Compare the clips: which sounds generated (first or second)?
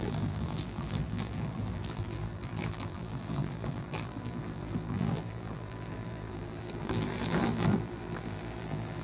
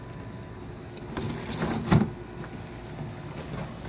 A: first